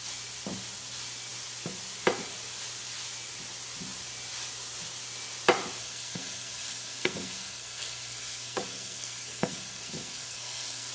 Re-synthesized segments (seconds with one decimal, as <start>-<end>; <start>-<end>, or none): 5.8-10.9